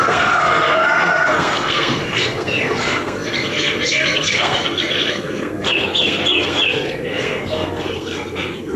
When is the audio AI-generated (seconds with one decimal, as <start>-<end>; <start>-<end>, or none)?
0.0-8.8